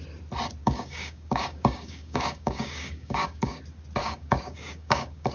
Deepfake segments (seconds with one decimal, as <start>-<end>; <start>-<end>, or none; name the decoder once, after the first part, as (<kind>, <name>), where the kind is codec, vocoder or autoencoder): 0.6-3.6 (codec, DAC); 4.0-5.3